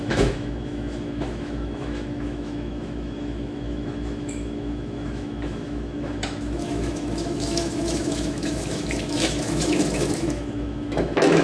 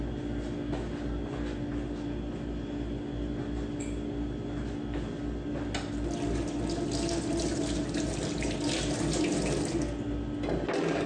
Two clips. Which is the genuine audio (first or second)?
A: second